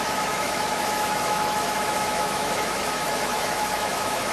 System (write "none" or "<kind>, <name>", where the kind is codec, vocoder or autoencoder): autoencoder, DAC-VAE